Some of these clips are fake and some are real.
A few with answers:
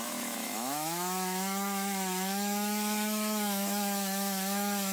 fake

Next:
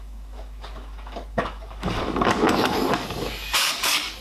fake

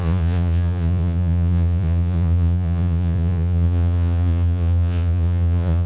fake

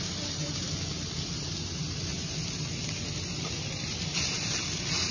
fake